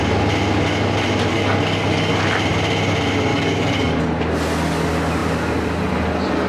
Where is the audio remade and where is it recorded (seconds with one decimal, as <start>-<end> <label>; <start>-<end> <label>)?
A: 0.0-1.3 recorded; 1.3-2.1 remade; 2.1-3.3 recorded; 3.3-4.0 remade; 4.0-6.5 recorded